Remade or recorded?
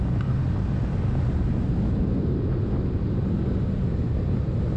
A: recorded